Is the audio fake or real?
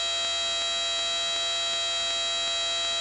real